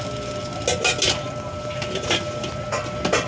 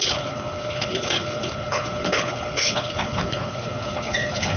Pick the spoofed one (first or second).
second